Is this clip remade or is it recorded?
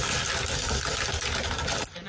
recorded